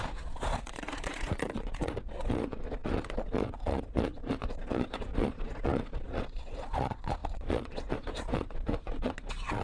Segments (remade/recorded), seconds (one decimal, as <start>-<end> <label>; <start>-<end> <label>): 0.0-9.6 remade